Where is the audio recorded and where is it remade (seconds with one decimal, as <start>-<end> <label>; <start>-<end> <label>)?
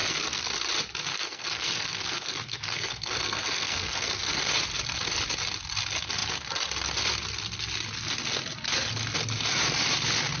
0.0-0.5 remade; 0.5-1.1 recorded; 1.1-4.4 remade; 4.4-10.4 recorded